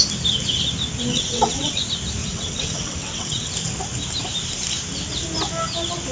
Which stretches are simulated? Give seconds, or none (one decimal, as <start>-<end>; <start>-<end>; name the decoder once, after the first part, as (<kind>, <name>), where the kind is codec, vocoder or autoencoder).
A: 1.1-1.8 (vocoder, WaveNeXt); 2.2-3.5